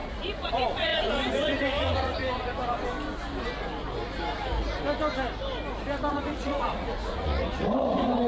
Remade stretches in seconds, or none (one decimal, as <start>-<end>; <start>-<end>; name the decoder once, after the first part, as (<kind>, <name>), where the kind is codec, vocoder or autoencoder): 0.0-2.2 (vocoder, Vocos); 6.1-8.3

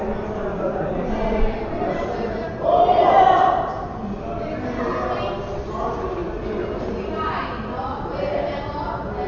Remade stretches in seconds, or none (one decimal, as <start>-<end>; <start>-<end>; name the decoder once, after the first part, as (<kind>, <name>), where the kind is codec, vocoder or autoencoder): 0.5-1.4 (vocoder, Vocos)

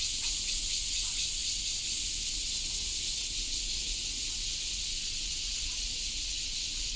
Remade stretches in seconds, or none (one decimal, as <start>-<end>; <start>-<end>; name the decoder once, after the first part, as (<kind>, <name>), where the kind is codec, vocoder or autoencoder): 0.0-7.0 (vocoder, WaveNeXt)

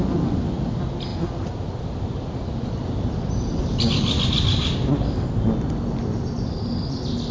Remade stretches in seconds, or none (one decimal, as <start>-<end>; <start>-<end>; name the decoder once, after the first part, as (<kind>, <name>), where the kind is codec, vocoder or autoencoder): none

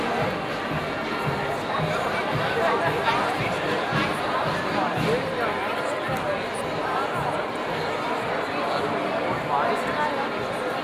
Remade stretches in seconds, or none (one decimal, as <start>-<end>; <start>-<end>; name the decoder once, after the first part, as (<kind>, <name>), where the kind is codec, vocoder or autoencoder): none